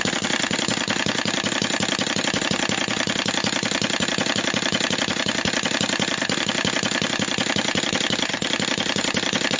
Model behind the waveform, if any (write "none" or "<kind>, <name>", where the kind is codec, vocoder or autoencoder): none